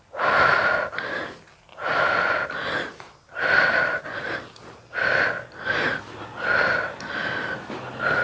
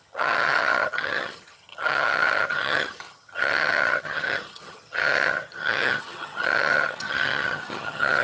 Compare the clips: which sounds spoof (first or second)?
second